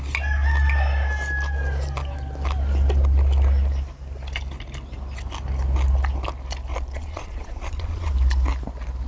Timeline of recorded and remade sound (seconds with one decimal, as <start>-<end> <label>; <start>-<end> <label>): 0.0-6.7 recorded; 6.7-8.1 remade; 8.1-9.1 recorded